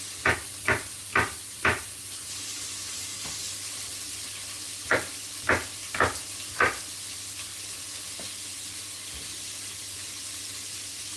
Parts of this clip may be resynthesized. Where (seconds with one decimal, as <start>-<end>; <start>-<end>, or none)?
none